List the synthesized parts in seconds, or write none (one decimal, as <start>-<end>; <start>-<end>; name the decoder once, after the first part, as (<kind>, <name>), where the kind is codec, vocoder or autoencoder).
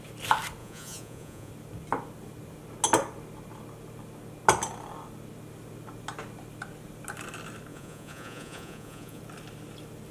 0.6-1.5 (vocoder, Vocos); 7.7-9.2